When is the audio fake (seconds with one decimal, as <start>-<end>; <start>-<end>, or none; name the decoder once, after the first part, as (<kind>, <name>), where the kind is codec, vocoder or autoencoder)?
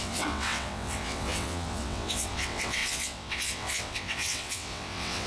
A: 0.0-5.3 (vocoder, WaveNeXt)